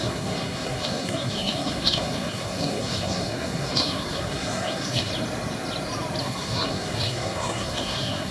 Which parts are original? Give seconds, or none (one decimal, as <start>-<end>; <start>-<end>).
5.1-6.2